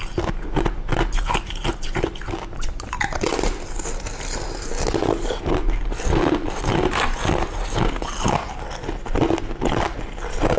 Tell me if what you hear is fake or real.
real